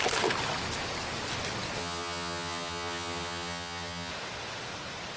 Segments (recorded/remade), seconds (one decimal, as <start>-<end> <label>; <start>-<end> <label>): 0.0-1.8 recorded; 1.8-4.1 remade; 4.1-5.2 recorded